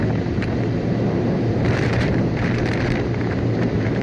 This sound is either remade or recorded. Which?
remade